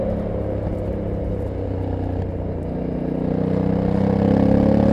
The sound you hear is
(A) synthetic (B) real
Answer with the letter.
B